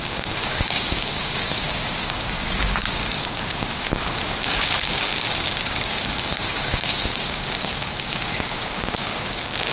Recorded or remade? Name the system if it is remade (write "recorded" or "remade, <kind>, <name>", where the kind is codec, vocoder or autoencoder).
remade, codec, DAC